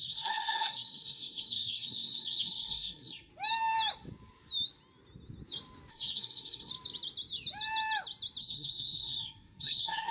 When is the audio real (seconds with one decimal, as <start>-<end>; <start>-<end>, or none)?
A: 3.3-5.9; 6.7-8.4